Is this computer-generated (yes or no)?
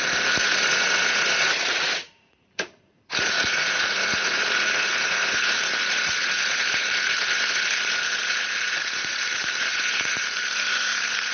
yes